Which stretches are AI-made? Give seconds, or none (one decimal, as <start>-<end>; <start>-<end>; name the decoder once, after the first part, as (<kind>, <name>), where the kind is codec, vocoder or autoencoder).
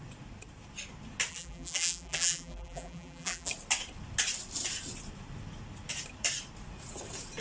1.3-3.5 (vocoder, BigVGAN v2)